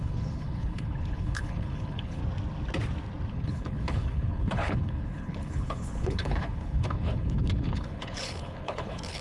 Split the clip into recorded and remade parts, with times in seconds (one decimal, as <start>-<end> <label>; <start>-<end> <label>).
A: 0.0-2.2 remade; 2.2-3.3 recorded; 3.3-9.2 remade